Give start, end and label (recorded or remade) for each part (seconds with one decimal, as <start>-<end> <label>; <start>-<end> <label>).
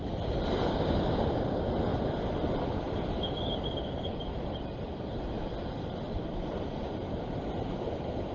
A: 0.0-8.3 recorded